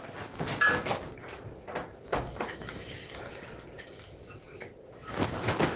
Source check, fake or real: real